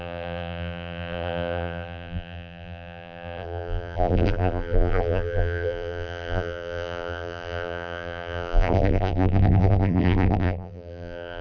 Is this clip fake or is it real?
fake